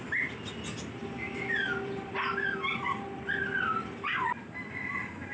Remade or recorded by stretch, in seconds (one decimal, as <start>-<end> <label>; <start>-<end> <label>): 0.0-5.3 recorded